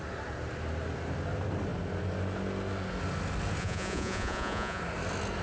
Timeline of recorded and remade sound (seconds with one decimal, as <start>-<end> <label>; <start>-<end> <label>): 0.0-3.6 recorded; 3.6-4.8 remade; 4.8-5.4 recorded